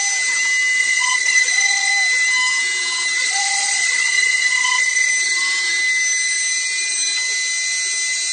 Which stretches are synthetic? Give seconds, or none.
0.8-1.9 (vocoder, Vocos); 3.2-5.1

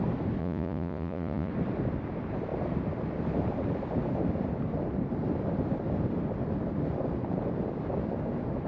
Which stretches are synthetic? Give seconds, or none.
0.4-1.5 (vocoder, Vocos)